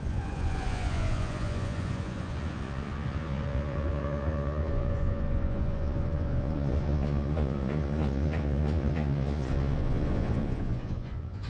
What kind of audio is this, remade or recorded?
remade